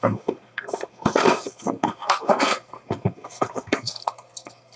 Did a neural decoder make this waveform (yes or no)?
yes